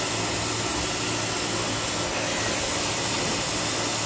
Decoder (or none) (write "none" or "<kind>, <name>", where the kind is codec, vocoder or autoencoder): none